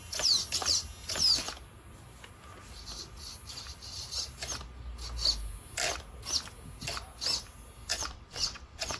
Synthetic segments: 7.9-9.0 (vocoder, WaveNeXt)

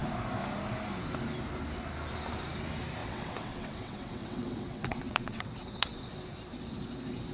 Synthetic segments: 3.0-6.1 (vocoder, WaveNeXt)

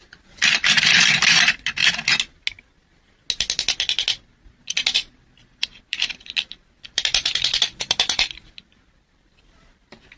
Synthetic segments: 0.0-1.8 (vocoder, BigVGAN v2); 5.8-10.2

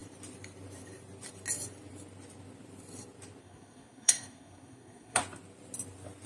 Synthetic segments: 3.4-5.2 (codec, SNAC)

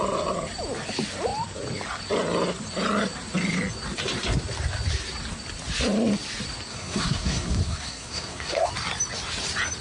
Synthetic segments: 6.7-8.7 (codec, SNAC)

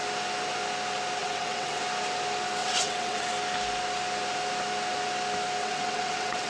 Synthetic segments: 1.2-1.8 (vocoder, WaveNeXt); 2.6-3.3; 5.6-6.5

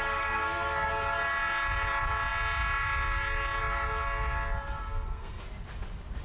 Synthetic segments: 0.0-0.9 (codec, SNAC); 4.8-5.4

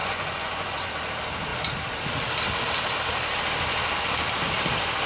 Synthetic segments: 0.0-0.9 (vocoder, Vocos)